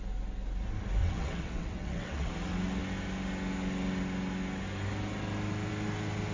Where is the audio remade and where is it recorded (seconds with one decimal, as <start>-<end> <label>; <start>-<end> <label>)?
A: 0.0-1.0 recorded; 1.0-2.3 remade; 2.3-6.3 recorded